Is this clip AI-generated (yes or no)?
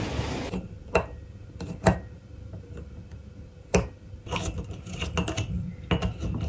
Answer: no